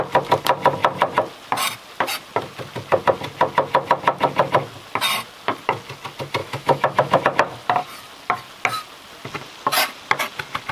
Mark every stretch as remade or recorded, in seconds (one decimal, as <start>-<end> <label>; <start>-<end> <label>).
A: 0.0-6.4 recorded; 6.4-7.2 remade; 7.2-10.7 recorded